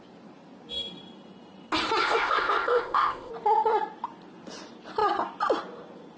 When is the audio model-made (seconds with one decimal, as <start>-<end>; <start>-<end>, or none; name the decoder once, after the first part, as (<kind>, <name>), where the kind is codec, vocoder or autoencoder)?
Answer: 2.0-3.3 (codec, ZipCodec)